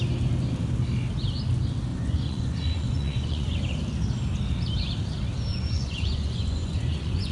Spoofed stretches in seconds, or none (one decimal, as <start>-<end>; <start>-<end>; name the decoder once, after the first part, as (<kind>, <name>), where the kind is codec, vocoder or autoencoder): 1.9-3.6 (vocoder, Vocos); 5.5-7.3